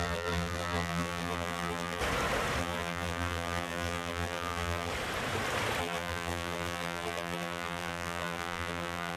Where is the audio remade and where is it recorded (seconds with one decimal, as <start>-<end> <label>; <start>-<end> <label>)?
0.0-2.0 remade; 2.0-2.6 recorded; 2.6-4.9 remade; 4.9-5.8 recorded; 5.8-9.2 remade